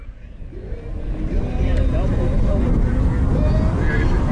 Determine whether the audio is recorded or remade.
recorded